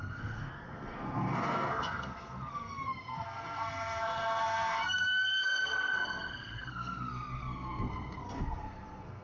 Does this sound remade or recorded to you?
remade